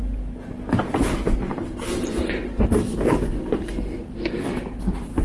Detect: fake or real real